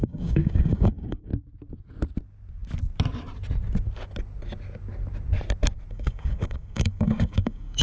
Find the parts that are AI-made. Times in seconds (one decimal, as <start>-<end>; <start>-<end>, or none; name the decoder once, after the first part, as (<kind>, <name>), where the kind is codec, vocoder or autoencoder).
0.0-1.3 (codec, DAC); 5.9-7.8

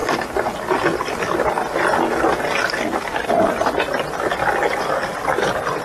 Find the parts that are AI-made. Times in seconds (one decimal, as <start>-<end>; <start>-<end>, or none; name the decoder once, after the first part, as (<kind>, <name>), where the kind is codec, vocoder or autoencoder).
none

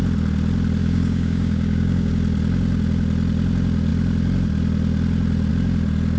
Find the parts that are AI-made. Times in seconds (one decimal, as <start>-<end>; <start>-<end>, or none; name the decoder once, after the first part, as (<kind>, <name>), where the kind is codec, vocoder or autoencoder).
0.8-2.1 (codec, DAC)